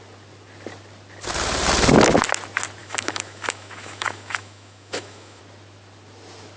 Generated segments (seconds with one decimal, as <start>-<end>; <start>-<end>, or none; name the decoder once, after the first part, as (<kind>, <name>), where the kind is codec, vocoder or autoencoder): 2.8-5.4 (autoencoder, DAC-VAE)